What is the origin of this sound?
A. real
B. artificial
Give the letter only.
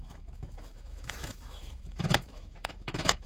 B